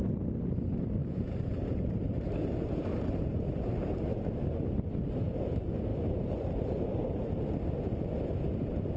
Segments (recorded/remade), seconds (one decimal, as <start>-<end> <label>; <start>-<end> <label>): 0.0-1.0 recorded; 1.0-4.0 remade; 4.0-5.9 recorded; 5.9-7.5 remade; 7.5-9.0 recorded